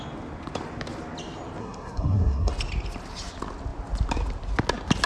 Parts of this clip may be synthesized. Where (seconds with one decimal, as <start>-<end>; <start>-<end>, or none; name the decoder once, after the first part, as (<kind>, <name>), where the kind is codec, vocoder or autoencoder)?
1.6-2.5 (codec, SNAC)